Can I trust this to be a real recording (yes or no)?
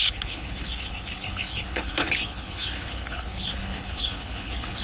no